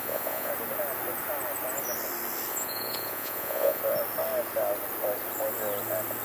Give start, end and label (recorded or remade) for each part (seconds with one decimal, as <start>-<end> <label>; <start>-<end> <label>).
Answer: 0.0-0.5 remade; 0.5-2.5 recorded; 2.5-3.8 remade; 3.8-6.2 recorded